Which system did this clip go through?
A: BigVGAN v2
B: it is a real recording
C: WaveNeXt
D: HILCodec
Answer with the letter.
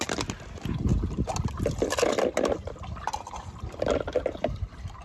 B